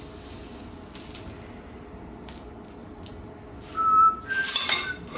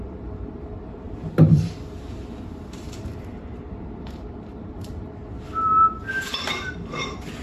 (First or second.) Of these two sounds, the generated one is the second